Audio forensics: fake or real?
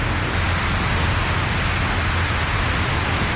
real